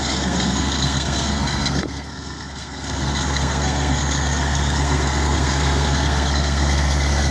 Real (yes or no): no